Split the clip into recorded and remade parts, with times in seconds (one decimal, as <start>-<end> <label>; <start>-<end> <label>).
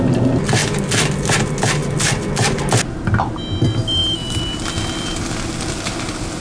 0.0-6.4 recorded